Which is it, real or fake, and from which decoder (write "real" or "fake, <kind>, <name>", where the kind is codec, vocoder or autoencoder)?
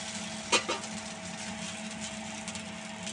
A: real